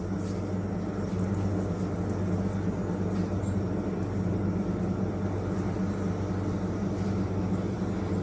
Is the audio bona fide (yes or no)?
yes